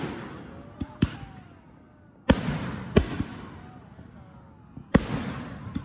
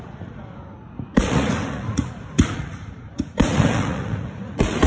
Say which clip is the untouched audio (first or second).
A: first